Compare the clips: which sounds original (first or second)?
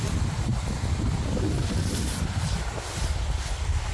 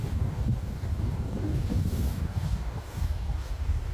first